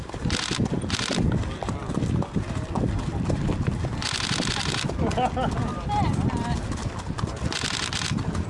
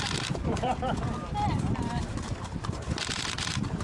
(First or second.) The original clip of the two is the first